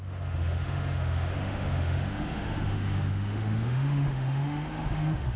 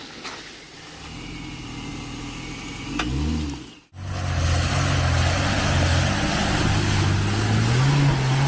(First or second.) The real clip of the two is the second